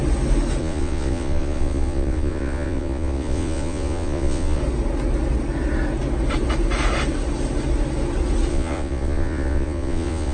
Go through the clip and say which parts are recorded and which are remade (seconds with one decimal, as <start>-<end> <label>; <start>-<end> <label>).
0.0-0.6 recorded; 0.6-4.6 remade; 4.6-8.5 recorded; 8.5-10.3 remade